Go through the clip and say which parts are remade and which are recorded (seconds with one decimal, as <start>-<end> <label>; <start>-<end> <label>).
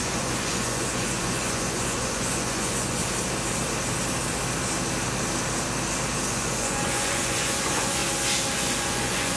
0.0-3.0 remade; 3.0-6.3 recorded; 6.3-8.0 remade; 8.0-8.5 recorded; 8.5-9.4 remade